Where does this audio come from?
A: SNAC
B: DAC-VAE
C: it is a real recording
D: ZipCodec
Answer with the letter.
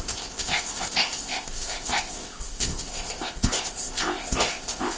D